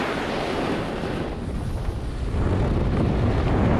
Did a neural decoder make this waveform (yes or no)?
no